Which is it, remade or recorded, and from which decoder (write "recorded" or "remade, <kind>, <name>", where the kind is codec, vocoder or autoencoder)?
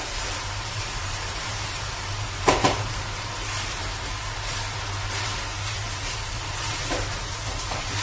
remade, vocoder, BigVGAN v2